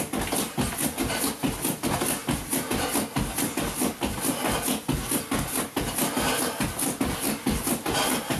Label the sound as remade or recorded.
recorded